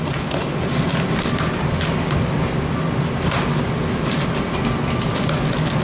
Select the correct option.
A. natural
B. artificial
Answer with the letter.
A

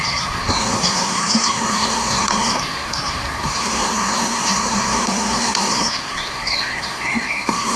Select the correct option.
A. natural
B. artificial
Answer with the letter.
B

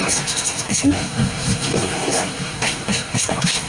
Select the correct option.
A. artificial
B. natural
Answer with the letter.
A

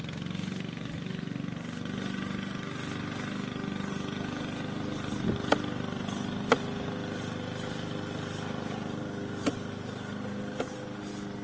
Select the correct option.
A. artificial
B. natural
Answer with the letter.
B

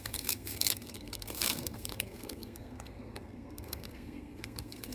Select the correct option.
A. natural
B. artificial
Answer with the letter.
B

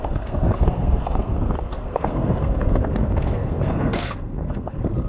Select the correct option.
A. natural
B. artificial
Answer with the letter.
B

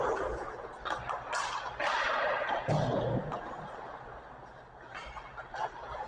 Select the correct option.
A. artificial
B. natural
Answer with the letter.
B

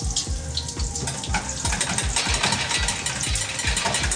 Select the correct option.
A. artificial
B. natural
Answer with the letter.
B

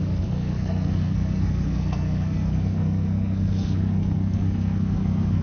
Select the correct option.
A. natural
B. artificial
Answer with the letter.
B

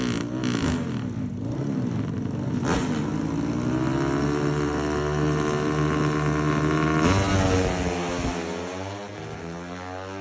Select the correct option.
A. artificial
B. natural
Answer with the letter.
B